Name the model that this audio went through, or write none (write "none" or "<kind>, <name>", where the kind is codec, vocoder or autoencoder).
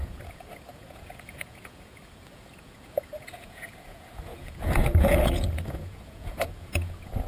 vocoder, Vocos